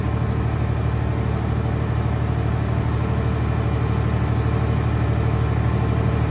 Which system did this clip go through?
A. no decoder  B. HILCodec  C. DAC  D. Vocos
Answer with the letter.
A